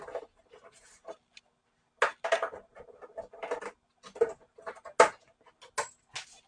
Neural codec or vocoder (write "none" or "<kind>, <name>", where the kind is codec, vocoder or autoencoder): none